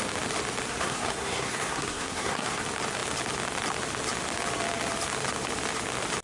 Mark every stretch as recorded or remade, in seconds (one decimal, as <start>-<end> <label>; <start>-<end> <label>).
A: 0.0-0.7 recorded; 0.7-2.6 remade; 2.6-6.2 recorded